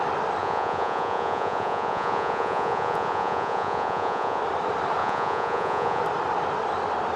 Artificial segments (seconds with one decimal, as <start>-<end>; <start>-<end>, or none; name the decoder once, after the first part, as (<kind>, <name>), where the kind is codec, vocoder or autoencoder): 0.4-4.4 (vocoder, Vocos); 5.0-6.0